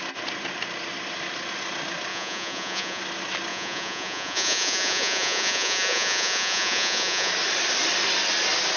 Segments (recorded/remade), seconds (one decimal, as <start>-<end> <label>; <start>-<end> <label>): 0.0-2.1 recorded; 2.1-3.0 remade; 3.0-3.5 recorded; 3.5-7.3 remade; 7.3-8.8 recorded